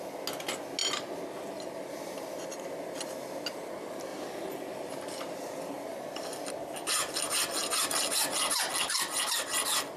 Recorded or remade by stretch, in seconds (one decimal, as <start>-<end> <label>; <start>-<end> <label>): 0.0-4.1 recorded; 4.1-6.5 remade; 6.5-7.6 recorded; 7.6-8.7 remade; 8.7-10.0 recorded